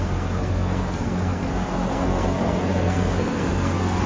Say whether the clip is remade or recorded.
remade